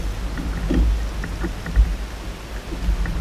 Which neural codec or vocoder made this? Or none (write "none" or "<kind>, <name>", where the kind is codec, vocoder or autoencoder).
none